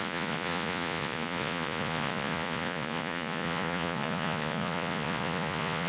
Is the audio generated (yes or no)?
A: yes